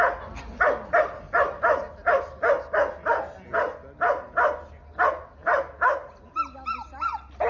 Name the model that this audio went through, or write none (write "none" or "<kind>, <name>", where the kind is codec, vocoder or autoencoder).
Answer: none